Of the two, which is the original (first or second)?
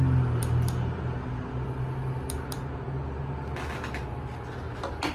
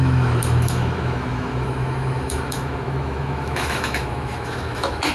first